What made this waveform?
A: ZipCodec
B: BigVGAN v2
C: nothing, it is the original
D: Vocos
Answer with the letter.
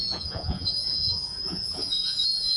D